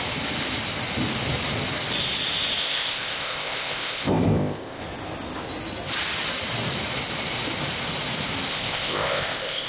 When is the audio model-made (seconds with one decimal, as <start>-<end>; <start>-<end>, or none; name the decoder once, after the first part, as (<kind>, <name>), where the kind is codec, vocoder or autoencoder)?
2.6-4.8 (codec, ZipCodec); 8.5-9.7